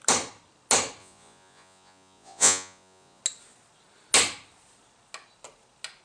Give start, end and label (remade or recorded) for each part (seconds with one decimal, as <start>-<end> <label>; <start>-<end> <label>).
0.0-1.0 recorded; 1.0-3.2 remade; 3.2-6.0 recorded